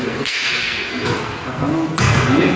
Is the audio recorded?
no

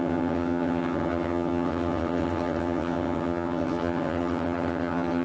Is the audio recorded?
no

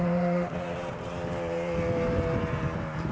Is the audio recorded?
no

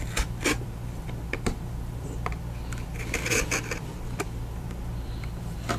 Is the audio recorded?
no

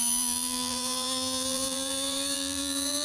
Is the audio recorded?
no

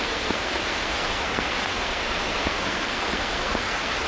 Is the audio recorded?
no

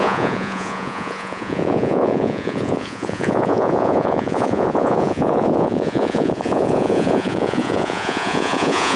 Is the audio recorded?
no